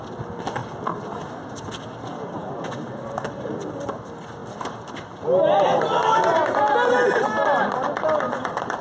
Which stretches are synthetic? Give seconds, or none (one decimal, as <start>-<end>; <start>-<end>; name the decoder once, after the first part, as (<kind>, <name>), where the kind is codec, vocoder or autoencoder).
none

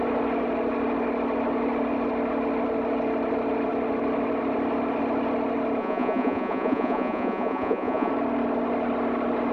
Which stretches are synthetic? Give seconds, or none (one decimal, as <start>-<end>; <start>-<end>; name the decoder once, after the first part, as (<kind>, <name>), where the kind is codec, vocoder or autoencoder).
5.8-8.1 (vocoder, Vocos)

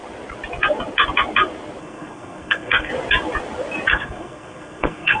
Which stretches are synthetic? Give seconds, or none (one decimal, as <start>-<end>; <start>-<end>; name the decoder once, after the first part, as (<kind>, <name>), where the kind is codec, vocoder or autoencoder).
1.8-2.9 (codec, SNAC); 3.9-5.2

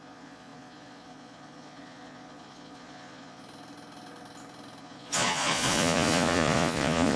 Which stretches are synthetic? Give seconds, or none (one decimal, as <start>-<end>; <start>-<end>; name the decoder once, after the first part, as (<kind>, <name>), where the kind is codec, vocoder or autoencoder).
0.0-3.4 (vocoder, Vocos); 4.8-7.2

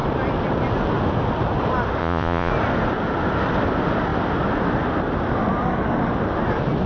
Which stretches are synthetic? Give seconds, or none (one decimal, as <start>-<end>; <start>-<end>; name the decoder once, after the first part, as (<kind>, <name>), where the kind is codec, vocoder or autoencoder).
2.0-2.5 (vocoder, Vocos)